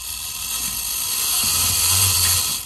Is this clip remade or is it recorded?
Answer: recorded